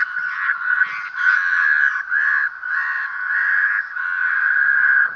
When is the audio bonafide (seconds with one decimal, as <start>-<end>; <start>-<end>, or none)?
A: 0.0-5.2